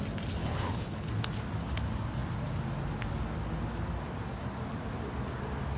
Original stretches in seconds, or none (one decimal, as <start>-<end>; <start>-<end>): 0.0-0.4; 1.1-5.8